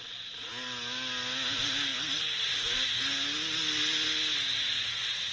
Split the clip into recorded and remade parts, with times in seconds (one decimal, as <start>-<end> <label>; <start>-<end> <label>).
0.0-5.3 recorded